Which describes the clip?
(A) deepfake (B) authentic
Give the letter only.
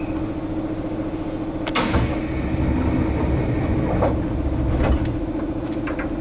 B